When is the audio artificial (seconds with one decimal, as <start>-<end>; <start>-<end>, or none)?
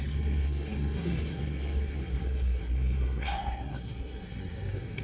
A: 0.0-5.0